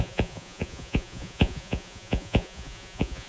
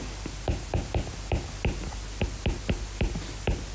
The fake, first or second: first